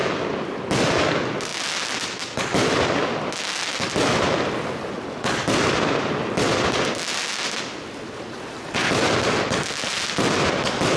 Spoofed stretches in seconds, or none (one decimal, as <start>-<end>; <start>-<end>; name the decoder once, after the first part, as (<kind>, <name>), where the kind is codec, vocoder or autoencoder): none